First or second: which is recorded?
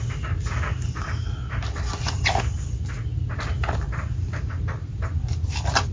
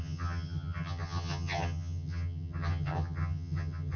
first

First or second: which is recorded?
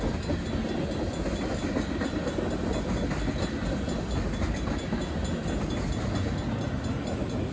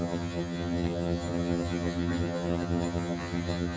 first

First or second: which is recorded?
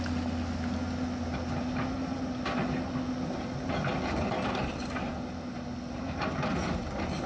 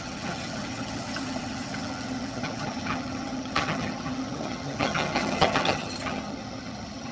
first